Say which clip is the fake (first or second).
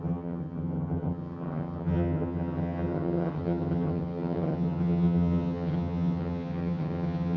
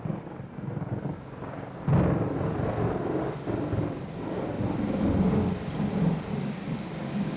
first